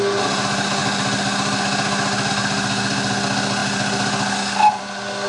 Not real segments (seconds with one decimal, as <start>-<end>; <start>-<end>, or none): none